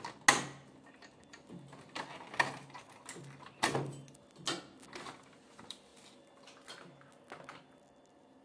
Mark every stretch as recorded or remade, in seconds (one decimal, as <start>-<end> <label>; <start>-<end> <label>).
0.0-8.4 recorded